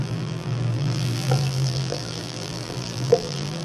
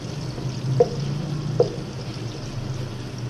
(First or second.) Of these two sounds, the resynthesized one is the first